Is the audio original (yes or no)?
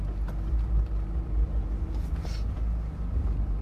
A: yes